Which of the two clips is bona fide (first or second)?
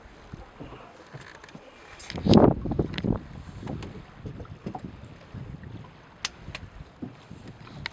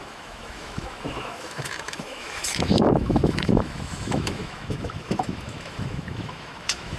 first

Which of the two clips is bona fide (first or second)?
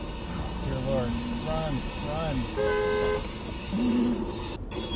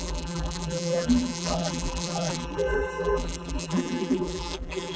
first